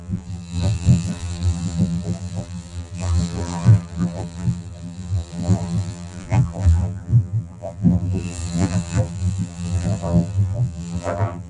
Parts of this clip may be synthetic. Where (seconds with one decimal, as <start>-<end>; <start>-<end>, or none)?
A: 0.0-11.5